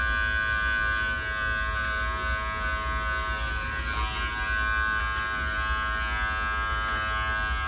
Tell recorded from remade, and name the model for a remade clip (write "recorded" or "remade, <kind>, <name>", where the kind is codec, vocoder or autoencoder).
recorded